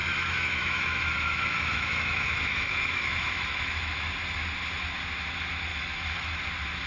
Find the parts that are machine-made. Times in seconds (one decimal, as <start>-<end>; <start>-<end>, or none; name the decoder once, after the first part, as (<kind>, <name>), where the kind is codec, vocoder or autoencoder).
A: 0.0-4.1 (autoencoder, DAC-VAE); 5.7-6.4